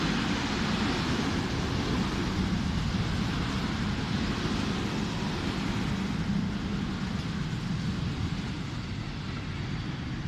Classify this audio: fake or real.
real